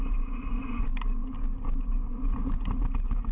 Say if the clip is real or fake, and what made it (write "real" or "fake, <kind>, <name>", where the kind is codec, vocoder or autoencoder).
real